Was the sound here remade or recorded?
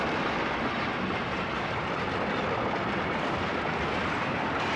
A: recorded